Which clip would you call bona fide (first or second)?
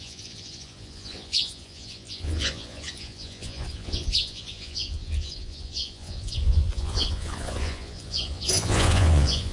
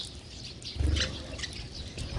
second